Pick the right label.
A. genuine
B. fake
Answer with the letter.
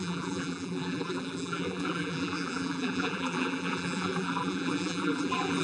B